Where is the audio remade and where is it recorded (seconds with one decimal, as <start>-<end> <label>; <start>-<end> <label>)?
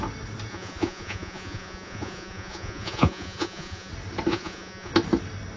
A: 0.0-0.5 recorded; 0.5-3.9 remade; 3.9-4.3 recorded; 4.3-4.9 remade; 4.9-5.6 recorded